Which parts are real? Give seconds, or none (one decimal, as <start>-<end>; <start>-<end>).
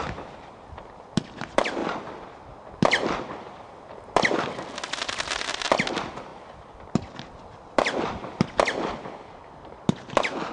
0.0-10.5